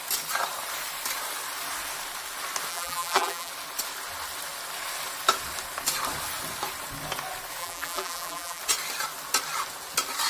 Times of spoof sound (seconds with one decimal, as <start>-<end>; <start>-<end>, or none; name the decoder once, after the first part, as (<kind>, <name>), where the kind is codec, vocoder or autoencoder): 2.7-3.5 (vocoder, BigVGAN v2); 7.6-8.6